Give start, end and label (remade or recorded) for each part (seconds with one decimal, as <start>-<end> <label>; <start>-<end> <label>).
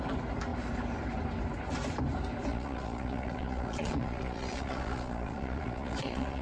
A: 0.0-2.5 recorded; 2.5-6.4 remade